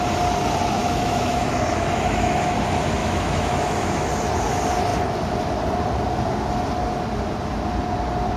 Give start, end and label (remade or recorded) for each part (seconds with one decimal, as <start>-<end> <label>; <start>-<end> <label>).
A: 0.0-0.8 recorded; 0.8-2.4 remade; 2.4-3.0 recorded; 3.0-4.1 remade; 4.1-8.4 recorded